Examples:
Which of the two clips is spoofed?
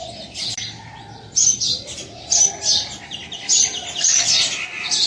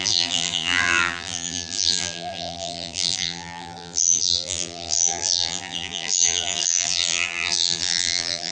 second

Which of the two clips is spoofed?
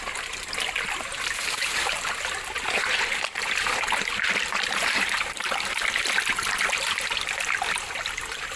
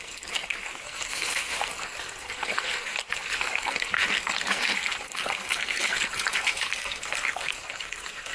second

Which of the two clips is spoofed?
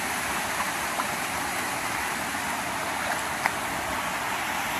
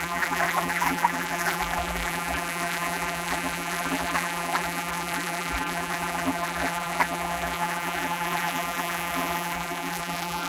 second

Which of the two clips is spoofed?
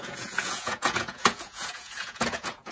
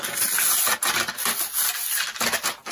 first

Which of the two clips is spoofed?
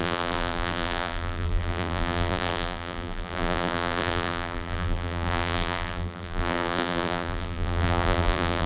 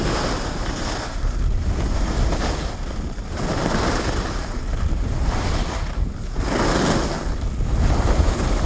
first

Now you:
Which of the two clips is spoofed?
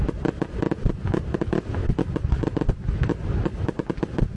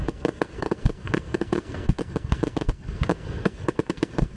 second